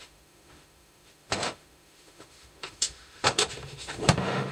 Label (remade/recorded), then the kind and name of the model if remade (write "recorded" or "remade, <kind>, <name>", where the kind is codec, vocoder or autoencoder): remade, autoencoder, DAC-VAE